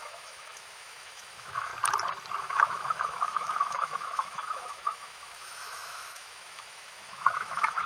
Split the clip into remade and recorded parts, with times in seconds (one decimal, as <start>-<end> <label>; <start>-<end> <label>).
0.0-1.7 remade; 1.7-2.4 recorded; 2.4-7.9 remade